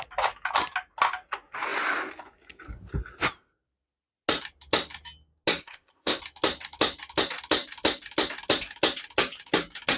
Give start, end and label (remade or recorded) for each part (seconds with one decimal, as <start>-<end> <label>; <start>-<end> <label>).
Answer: 0.0-5.6 recorded; 5.6-6.2 remade; 6.2-10.0 recorded